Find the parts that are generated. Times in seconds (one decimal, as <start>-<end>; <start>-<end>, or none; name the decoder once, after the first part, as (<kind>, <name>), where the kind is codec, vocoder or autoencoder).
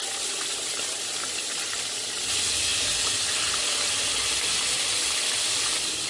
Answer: none